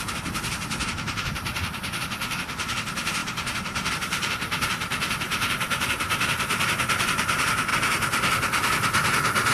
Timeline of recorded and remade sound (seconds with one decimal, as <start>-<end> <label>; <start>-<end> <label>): 0.0-7.7 remade; 7.7-9.5 recorded